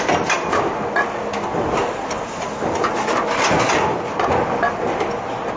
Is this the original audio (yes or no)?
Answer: yes